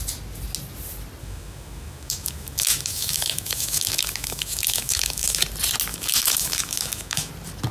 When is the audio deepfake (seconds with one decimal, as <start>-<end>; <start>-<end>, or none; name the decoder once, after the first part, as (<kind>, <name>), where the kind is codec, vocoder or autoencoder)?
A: 1.2-5.4 (autoencoder, DAC-VAE); 5.9-7.3